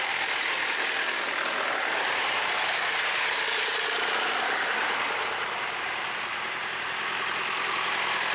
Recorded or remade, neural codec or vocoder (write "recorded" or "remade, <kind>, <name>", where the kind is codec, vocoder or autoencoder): recorded